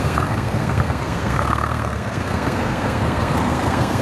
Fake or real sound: fake